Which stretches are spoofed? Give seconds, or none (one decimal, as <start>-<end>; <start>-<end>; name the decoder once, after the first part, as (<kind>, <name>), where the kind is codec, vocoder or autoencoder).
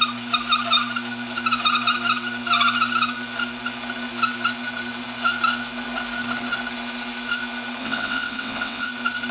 7.8-8.9 (vocoder, WaveNeXt)